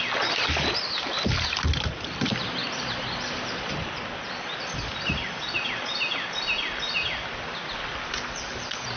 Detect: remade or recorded recorded